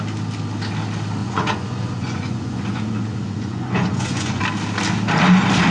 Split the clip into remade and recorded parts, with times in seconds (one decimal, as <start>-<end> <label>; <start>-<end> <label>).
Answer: 0.0-1.2 recorded; 1.2-4.4 remade; 4.4-5.7 recorded